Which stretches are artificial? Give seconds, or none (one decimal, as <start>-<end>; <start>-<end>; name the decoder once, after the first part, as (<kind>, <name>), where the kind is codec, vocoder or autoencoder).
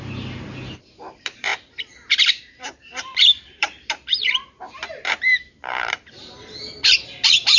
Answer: 0.0-1.5 (vocoder, BigVGAN v2); 2.3-7.6